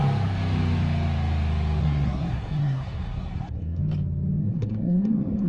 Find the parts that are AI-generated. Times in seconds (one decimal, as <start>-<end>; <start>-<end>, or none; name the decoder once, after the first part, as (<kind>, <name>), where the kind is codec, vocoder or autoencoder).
1.8-3.8 (codec, SNAC); 4.4-5.5